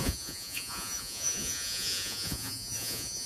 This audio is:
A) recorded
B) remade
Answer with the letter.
B